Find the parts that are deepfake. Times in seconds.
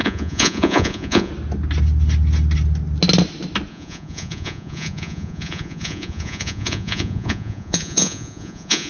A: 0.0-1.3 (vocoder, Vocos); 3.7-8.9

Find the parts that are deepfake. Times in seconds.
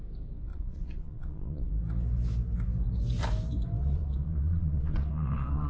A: 0.5-1.7 (vocoder, Vocos); 3.8-5.7